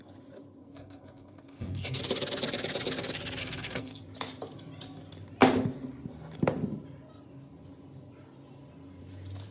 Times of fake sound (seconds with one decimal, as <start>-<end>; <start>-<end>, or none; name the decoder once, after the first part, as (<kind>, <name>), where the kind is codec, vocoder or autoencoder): 0.6-2.0 (codec, SNAC); 3.4-4.0